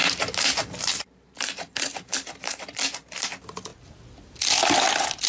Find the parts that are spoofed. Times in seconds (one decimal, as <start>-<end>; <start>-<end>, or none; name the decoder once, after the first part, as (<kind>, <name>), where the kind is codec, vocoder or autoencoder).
0.0-3.2 (vocoder, BigVGAN v2)